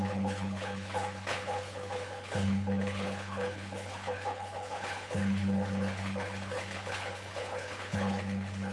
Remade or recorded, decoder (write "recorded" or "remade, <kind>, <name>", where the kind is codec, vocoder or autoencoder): remade, codec, HILCodec